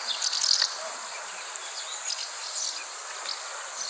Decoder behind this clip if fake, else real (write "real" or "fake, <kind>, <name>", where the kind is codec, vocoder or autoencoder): real